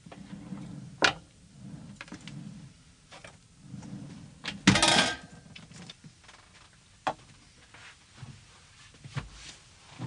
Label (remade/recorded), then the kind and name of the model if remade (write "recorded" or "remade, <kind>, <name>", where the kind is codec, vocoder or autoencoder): recorded